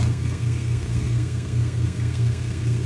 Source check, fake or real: fake